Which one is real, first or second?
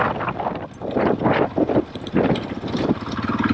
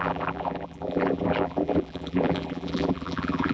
first